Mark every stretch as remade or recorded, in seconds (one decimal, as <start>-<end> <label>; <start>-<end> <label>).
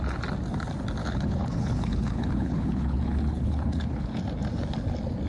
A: 0.0-1.0 recorded; 1.0-4.2 remade; 4.2-5.3 recorded